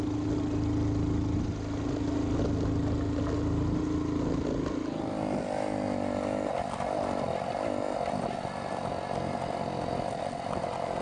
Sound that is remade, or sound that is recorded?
recorded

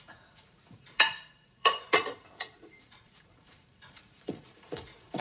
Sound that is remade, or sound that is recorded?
remade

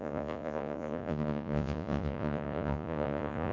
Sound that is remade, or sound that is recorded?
remade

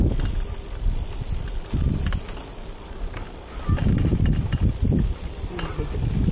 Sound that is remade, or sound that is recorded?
recorded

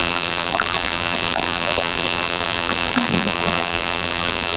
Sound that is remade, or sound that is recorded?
remade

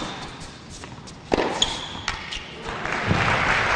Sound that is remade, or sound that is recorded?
recorded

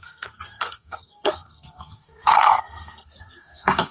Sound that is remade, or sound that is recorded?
remade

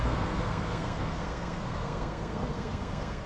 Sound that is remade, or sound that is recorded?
remade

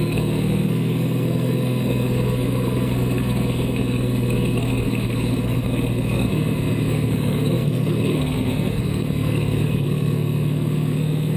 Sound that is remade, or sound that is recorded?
remade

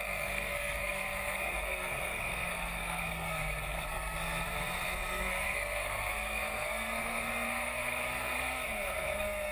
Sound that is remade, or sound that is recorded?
remade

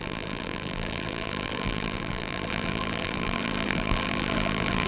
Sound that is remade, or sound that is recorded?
remade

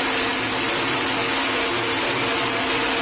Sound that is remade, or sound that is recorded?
recorded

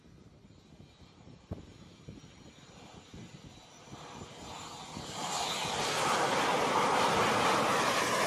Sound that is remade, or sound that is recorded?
recorded